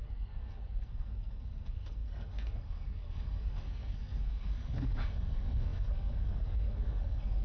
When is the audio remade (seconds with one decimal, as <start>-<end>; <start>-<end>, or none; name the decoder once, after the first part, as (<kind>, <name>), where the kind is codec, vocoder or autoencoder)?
0.0-7.4 (codec, SNAC)